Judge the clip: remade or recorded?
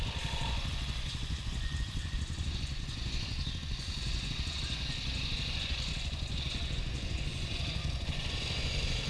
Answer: remade